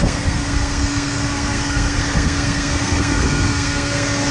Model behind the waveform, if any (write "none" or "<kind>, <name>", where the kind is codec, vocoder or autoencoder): codec, SNAC